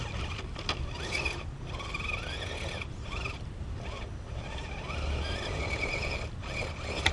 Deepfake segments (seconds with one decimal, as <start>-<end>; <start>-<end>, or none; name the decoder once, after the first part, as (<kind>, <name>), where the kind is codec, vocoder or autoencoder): none